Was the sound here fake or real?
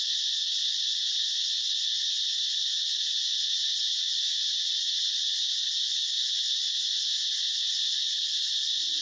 real